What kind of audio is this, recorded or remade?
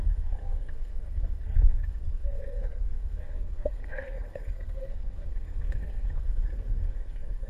remade